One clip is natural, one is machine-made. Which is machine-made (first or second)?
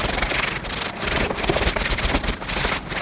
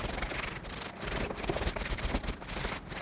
first